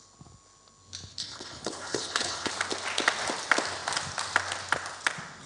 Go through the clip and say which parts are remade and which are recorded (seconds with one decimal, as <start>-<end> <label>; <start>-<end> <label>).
0.0-1.1 recorded; 1.1-2.5 remade; 2.5-5.5 recorded

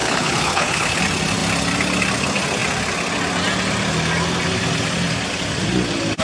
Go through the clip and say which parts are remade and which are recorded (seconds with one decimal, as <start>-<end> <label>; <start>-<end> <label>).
0.0-1.0 remade; 1.0-6.2 recorded

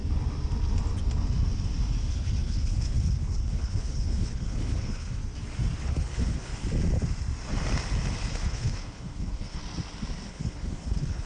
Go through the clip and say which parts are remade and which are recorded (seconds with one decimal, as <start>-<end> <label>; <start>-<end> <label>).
0.0-2.1 recorded; 2.1-5.2 remade; 5.2-5.8 recorded; 5.8-6.5 remade; 6.5-8.3 recorded; 8.3-9.6 remade; 9.6-10.3 recorded; 10.3-11.3 remade

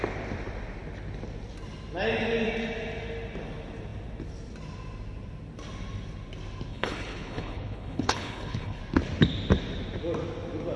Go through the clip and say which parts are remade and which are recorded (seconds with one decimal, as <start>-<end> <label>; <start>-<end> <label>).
0.0-6.7 recorded; 6.7-8.8 remade; 8.8-10.8 recorded

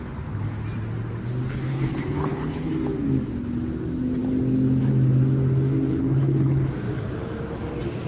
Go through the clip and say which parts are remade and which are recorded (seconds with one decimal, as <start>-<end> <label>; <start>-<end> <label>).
0.0-1.5 recorded; 1.5-2.7 remade; 2.7-5.9 recorded; 5.9-6.7 remade; 6.7-8.1 recorded

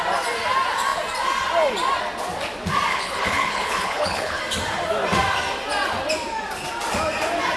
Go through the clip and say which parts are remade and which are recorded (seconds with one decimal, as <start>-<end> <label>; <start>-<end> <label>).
0.0-2.9 recorded; 2.9-4.4 remade; 4.4-7.6 recorded

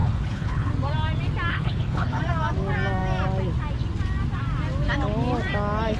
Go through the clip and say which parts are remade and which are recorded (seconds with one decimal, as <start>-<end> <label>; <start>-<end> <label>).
0.0-0.7 remade; 0.7-1.5 recorded; 1.5-2.2 remade; 2.2-6.0 recorded